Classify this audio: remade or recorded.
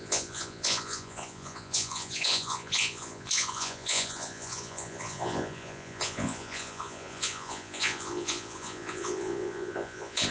remade